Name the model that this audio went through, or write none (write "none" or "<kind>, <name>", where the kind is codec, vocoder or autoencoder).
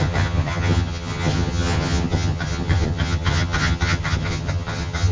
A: vocoder, HiFi-GAN